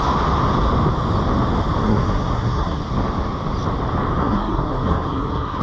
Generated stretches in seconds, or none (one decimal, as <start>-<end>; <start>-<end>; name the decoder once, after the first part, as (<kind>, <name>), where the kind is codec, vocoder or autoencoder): 1.8-2.8 (codec, SNAC); 4.2-5.6